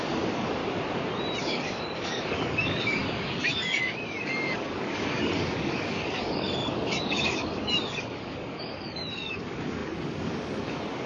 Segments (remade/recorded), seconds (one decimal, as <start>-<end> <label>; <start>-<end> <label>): 0.0-0.6 remade; 0.6-1.4 recorded; 1.4-11.1 remade